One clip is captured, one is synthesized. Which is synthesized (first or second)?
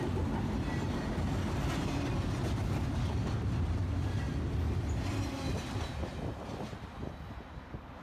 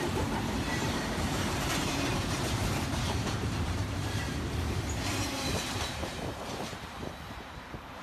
second